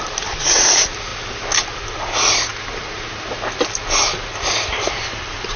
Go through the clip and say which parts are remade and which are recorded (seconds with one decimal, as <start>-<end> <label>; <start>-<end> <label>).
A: 0.0-1.1 remade; 1.1-4.3 recorded; 4.3-5.6 remade